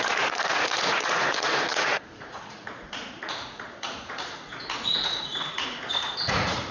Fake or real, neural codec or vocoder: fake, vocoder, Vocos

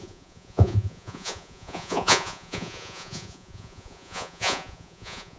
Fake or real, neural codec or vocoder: fake, vocoder, Vocos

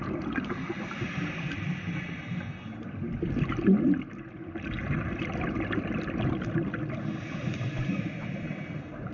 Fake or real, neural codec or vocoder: real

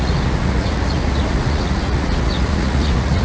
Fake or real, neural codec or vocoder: fake, vocoder, Vocos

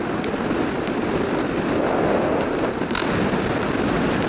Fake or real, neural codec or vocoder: real